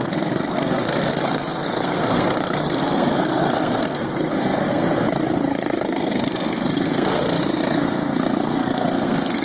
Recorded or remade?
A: remade